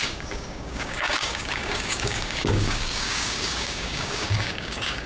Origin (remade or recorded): remade